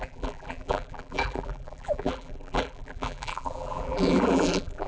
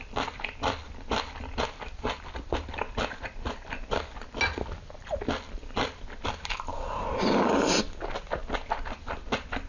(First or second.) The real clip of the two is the second